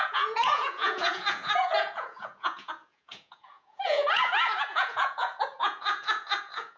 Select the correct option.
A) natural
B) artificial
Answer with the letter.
B